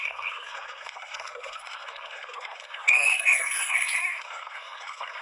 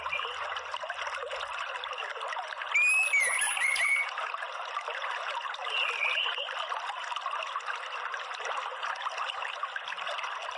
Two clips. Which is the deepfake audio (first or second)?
first